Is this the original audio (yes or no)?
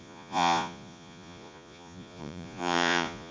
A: no